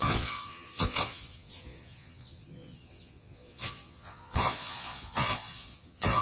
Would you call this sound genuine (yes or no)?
no